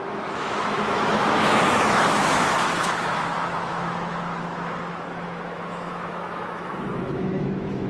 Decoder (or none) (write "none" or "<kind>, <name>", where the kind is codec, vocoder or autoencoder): autoencoder, DAC-VAE